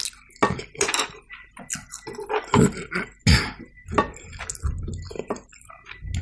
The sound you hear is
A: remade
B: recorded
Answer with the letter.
B